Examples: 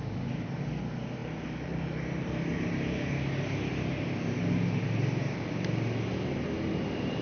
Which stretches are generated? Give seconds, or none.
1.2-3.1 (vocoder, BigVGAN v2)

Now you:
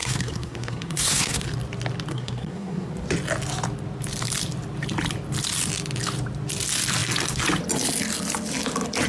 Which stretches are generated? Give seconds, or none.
0.0-1.5 (codec, SNAC); 2.1-2.9

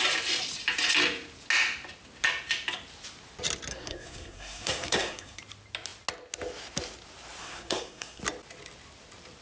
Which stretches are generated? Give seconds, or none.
3.7-5.4 (codec, SNAC); 7.4-8.2

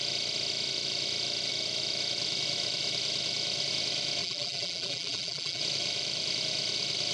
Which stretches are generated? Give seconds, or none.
4.2-5.6 (vocoder, BigVGAN v2)

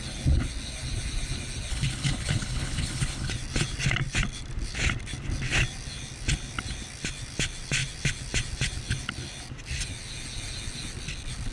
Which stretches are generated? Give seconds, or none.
1.7-3.3 (codec, HILCodec)